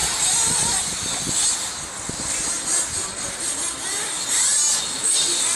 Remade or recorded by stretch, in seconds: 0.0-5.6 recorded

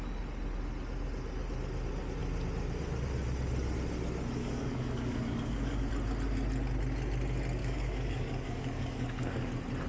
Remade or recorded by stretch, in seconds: 0.0-4.4 recorded; 4.4-5.9 remade; 5.9-7.6 recorded; 7.6-9.5 remade; 9.5-9.9 recorded

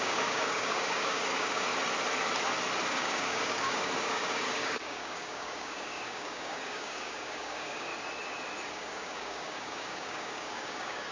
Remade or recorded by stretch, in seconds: 0.0-1.7 remade; 1.7-2.9 recorded; 2.9-7.9 remade; 7.9-8.7 recorded; 8.7-11.1 remade